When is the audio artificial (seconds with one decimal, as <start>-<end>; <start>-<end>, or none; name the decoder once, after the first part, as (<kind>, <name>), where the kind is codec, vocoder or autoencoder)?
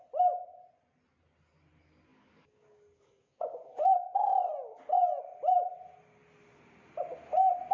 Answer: 2.1-3.9 (codec, DAC)